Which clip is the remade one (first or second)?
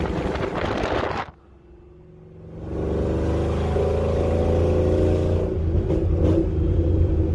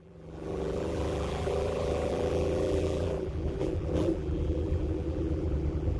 second